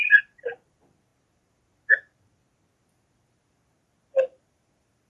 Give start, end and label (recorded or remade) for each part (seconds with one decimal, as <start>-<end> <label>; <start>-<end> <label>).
0.0-5.1 recorded